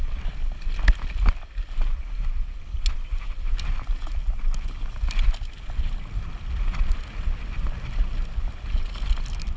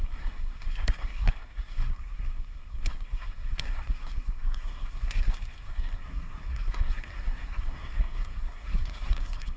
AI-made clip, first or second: second